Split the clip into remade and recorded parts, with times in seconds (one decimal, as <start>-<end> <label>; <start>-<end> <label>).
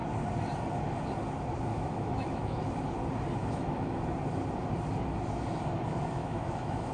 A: 0.0-1.7 recorded; 1.7-2.6 remade; 2.6-3.4 recorded; 3.4-4.0 remade; 4.0-6.2 recorded; 6.2-6.9 remade